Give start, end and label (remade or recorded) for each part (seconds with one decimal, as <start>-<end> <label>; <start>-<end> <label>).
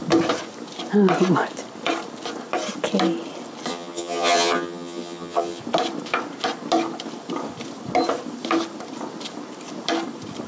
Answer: 0.0-3.7 recorded; 3.7-5.6 remade; 5.6-10.5 recorded